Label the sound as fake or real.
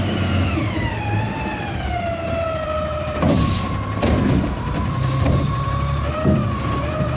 fake